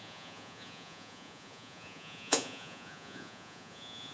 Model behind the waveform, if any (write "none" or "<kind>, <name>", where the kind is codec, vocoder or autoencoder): vocoder, Vocos